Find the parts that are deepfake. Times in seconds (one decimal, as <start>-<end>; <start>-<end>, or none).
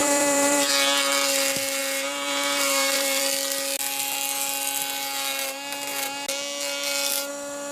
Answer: 0.0-0.7; 1.8-3.2